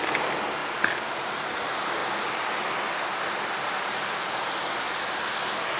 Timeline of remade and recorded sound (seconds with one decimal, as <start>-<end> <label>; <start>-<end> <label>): 0.0-0.6 remade; 0.6-1.3 recorded; 1.3-2.0 remade; 2.0-5.8 recorded